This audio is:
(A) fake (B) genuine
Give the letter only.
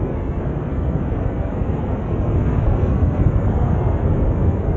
A